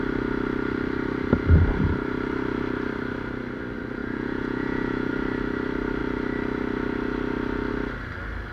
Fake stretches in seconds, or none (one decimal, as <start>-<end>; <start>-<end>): 4.0-5.1